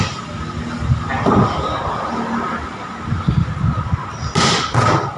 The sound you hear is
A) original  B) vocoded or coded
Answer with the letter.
A